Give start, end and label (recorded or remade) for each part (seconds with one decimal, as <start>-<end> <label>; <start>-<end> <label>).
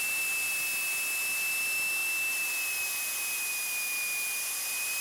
0.0-5.0 recorded